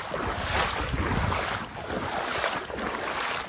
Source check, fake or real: real